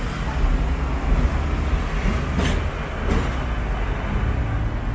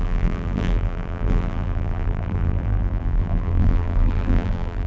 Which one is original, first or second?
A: first